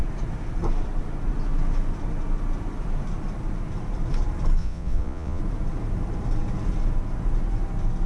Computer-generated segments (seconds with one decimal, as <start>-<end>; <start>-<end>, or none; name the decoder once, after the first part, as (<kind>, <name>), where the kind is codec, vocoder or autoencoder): 4.6-5.4 (vocoder, Vocos)